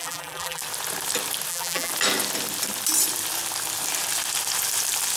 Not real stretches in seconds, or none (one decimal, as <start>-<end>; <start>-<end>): 0.0-0.6; 1.5-1.9

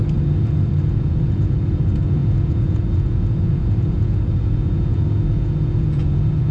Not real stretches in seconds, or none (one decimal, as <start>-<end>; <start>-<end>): 0.9-6.5

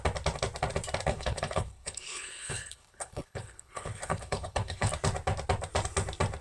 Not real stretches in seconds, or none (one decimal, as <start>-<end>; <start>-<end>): 1.1-4.9

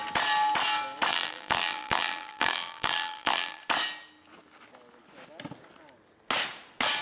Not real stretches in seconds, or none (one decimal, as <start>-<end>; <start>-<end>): 1.1-3.6

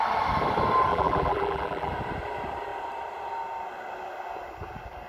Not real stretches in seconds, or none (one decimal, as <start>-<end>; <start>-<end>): 0.9-1.9